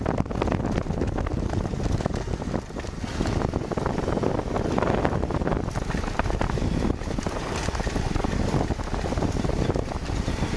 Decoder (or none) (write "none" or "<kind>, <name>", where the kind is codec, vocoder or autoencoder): none